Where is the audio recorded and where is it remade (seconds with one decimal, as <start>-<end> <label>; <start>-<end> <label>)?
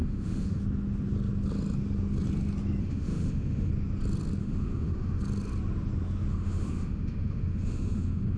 0.0-0.6 remade; 0.6-2.8 recorded; 2.8-3.7 remade; 3.7-4.4 recorded; 4.4-5.2 remade; 5.2-6.3 recorded; 6.3-8.4 remade